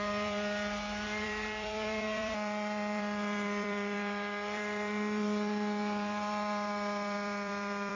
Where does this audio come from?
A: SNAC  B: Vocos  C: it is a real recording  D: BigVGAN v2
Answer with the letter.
D